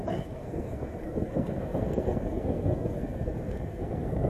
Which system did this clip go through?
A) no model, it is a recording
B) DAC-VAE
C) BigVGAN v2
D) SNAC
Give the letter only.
D